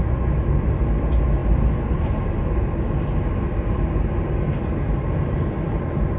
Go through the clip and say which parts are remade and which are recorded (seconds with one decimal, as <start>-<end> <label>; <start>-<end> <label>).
0.0-6.2 recorded